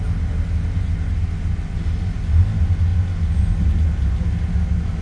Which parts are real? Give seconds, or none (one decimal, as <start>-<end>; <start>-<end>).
0.0-5.0